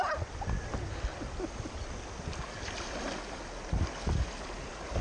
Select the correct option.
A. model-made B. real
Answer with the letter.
B